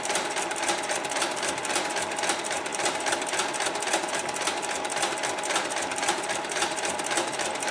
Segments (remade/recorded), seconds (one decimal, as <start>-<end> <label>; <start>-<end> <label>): 0.0-7.7 remade